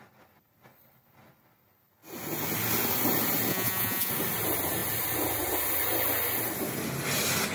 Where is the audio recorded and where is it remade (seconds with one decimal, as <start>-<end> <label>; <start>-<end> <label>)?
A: 0.0-3.5 recorded; 3.5-4.1 remade; 4.1-7.5 recorded